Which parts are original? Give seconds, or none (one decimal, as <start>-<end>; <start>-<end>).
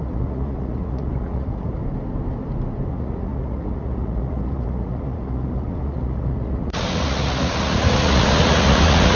1.8-2.9